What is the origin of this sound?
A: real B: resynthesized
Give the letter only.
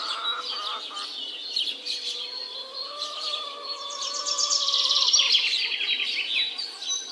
A